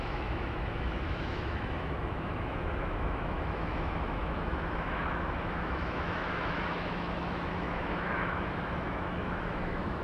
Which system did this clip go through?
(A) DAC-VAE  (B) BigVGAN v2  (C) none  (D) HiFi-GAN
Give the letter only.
A